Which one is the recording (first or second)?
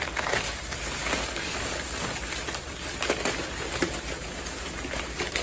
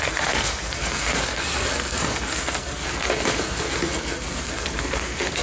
first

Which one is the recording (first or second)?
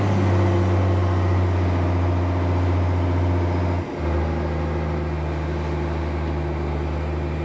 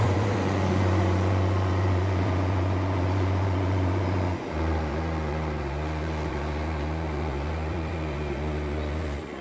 first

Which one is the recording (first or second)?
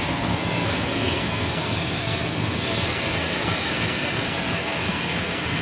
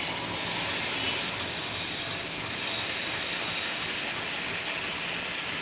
second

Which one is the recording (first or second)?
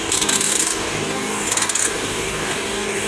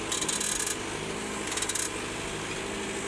second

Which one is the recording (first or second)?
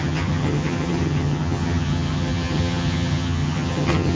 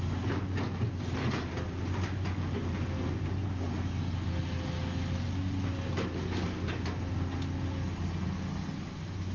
second